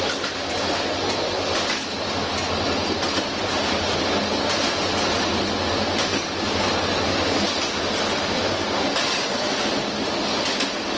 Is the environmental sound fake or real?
real